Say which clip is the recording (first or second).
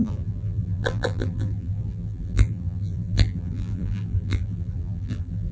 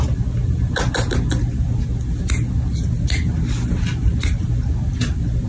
second